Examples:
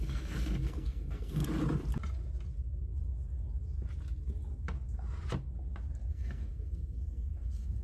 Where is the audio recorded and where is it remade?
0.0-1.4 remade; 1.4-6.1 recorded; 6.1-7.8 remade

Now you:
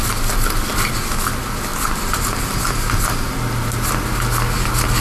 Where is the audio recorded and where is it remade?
0.0-5.0 recorded